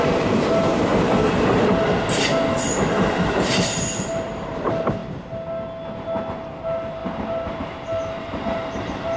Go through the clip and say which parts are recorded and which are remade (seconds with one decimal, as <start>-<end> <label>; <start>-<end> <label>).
0.0-0.9 remade; 0.9-4.0 recorded; 4.0-5.0 remade; 5.0-6.6 recorded; 6.6-9.2 remade

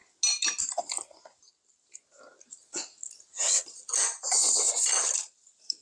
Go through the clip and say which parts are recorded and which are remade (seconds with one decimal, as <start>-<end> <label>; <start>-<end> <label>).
0.0-0.6 recorded; 0.6-1.4 remade; 1.4-4.5 recorded; 4.5-5.8 remade

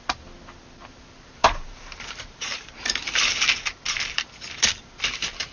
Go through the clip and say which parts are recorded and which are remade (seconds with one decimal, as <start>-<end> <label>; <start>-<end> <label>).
0.0-1.4 recorded; 1.4-2.8 remade; 2.8-5.5 recorded

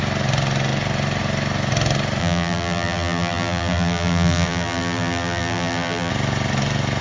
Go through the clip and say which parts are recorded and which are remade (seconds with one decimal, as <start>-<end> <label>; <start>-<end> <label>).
0.0-2.2 recorded; 2.2-6.1 remade; 6.1-7.0 recorded

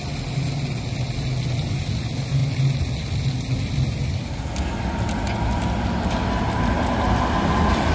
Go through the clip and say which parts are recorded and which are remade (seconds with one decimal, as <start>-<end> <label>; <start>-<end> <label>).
0.0-7.9 recorded

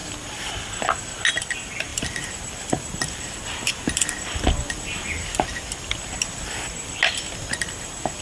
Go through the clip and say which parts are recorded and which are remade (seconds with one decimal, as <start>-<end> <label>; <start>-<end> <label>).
0.0-0.8 remade; 0.8-1.9 recorded; 1.9-4.7 remade; 4.7-8.2 recorded

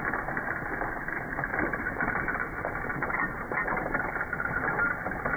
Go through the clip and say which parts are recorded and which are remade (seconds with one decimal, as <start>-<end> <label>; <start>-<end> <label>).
0.0-1.5 recorded; 1.5-2.1 remade; 2.1-2.9 recorded; 2.9-5.4 remade

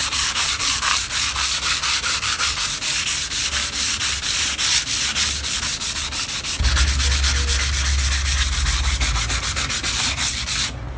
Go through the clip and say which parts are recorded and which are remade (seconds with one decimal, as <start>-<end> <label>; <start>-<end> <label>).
0.0-2.3 remade; 2.3-11.0 recorded